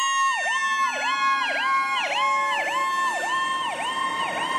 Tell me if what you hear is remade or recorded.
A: recorded